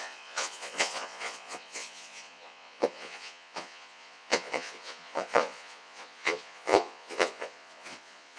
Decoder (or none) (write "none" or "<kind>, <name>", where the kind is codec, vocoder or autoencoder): vocoder, Vocos